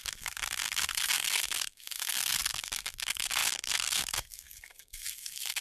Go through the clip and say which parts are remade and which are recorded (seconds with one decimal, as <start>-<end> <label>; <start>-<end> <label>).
0.0-5.6 remade